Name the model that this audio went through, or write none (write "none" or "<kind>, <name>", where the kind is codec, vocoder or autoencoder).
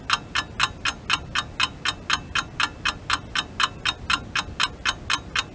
none